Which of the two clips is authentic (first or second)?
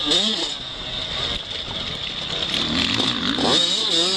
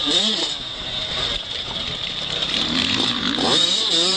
first